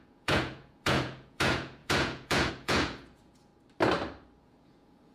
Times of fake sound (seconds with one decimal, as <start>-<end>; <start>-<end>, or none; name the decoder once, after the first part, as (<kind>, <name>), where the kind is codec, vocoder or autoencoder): 0.0-3.5 (vocoder, Vocos); 4.4-5.1